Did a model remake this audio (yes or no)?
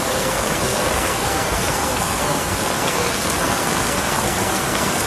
yes